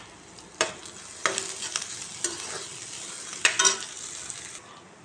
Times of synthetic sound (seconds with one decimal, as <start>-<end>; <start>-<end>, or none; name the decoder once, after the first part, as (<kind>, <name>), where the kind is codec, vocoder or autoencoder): none